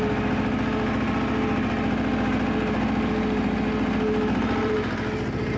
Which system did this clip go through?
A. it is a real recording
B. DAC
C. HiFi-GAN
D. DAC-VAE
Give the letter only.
A